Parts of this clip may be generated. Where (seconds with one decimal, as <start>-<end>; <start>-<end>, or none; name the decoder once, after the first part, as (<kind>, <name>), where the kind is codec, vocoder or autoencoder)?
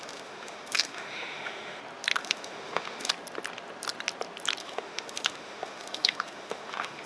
0.0-1.8 (autoencoder, DAC-VAE); 2.2-3.1; 4.6-7.1